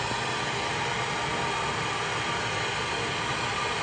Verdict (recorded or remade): recorded